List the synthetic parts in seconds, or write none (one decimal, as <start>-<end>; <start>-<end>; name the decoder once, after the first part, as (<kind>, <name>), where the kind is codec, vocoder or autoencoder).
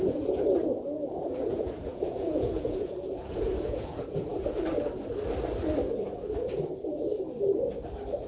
0.0-4.3 (vocoder, Vocos)